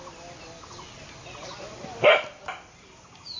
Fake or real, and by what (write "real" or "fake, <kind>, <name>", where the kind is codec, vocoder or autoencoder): real